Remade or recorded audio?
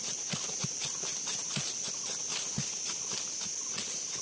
recorded